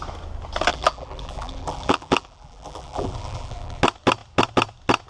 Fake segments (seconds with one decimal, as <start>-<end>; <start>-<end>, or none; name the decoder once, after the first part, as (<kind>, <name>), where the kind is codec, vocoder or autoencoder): 0.7-3.8 (vocoder, BigVGAN v2)

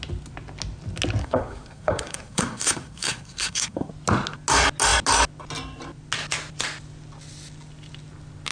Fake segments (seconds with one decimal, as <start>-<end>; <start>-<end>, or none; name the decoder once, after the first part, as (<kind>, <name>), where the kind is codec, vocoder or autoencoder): 1.2-3.9 (codec, SNAC)

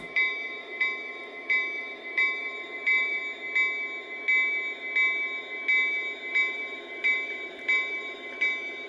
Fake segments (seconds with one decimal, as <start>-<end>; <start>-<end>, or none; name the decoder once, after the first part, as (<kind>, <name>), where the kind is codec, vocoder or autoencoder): 0.0-3.2 (vocoder, BigVGAN v2); 6.3-8.9

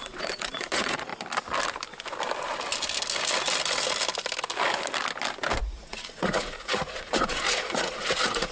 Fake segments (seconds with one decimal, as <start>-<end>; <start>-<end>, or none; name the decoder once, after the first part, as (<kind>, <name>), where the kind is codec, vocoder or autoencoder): 0.0-1.1 (vocoder, Vocos); 5.6-8.5

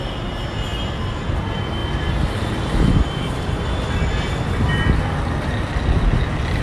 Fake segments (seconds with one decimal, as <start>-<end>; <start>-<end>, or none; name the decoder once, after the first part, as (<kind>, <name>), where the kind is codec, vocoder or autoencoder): none

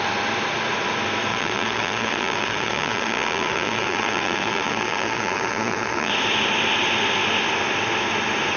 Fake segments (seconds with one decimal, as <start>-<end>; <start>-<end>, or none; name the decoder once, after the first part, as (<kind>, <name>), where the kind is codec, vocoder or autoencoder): 1.3-6.1 (vocoder, Vocos)